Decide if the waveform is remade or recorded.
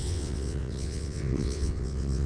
remade